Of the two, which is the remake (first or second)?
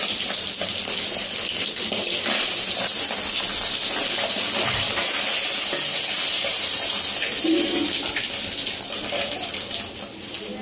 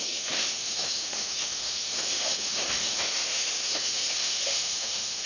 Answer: second